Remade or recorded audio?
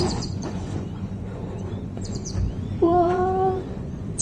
remade